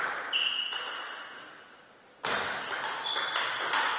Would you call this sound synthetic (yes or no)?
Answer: no